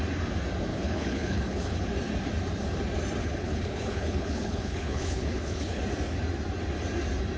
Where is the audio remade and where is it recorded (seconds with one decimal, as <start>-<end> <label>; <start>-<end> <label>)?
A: 0.0-0.7 recorded; 0.7-1.9 remade; 1.9-3.2 recorded; 3.2-5.8 remade; 5.8-7.4 recorded